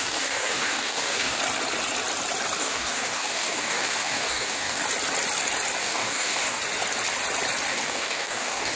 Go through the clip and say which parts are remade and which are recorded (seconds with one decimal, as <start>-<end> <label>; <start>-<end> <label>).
0.0-1.4 remade; 1.4-2.6 recorded; 2.6-4.8 remade; 4.8-5.8 recorded; 5.8-6.6 remade; 6.6-7.7 recorded; 7.7-8.8 remade